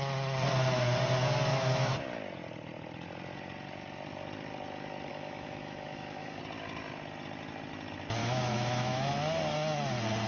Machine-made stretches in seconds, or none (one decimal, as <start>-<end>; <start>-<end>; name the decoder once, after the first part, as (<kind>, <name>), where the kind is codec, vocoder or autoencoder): 1.5-2.0 (autoencoder, DAC-VAE); 5.1-6.4; 8.2-9.1